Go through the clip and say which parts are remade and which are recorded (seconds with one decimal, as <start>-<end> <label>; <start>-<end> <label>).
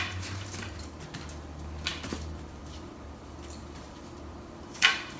0.0-1.9 recorded; 1.9-5.2 remade